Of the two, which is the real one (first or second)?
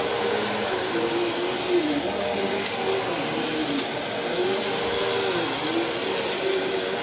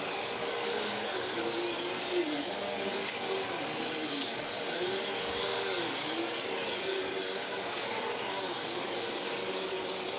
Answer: first